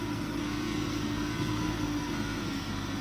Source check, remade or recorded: remade